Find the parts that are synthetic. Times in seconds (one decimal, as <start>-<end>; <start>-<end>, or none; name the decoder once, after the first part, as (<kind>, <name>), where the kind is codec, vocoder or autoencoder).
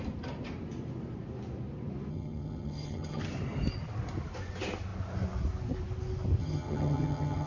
2.1-3.2 (vocoder, HiFi-GAN); 6.4-7.5